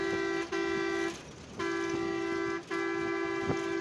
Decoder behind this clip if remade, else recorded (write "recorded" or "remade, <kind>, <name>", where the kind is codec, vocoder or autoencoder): recorded